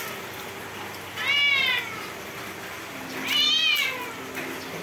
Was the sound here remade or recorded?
recorded